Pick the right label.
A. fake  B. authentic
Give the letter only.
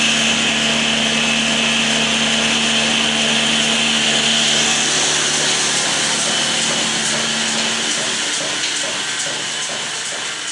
B